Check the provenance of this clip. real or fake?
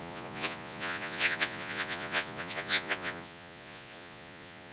fake